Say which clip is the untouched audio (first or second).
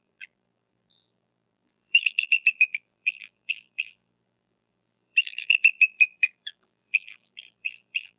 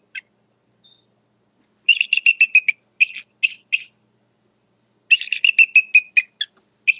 second